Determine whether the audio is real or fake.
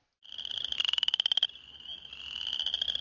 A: real